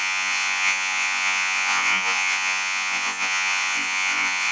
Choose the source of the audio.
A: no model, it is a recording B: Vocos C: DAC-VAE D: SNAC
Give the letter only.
B